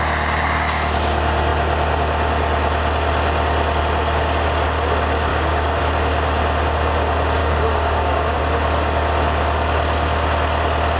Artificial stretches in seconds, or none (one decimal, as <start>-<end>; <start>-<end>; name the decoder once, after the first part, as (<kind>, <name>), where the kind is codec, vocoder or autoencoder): 5.3-5.8 (codec, DAC); 7.4-8.4